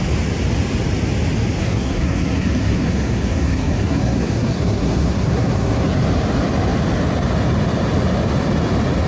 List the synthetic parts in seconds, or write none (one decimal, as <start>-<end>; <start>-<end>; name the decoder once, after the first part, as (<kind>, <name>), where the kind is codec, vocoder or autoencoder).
1.6-5.9 (codec, SNAC)